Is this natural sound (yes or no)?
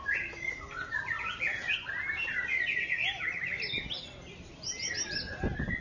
yes